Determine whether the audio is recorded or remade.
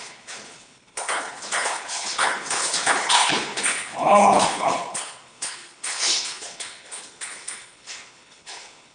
remade